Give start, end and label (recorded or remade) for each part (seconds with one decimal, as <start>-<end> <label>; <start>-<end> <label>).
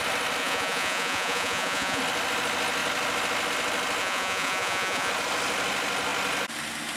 0.0-0.4 recorded; 0.4-2.0 remade; 2.0-4.0 recorded; 4.0-5.1 remade; 5.1-7.0 recorded